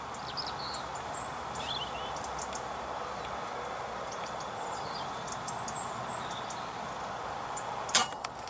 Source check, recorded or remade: recorded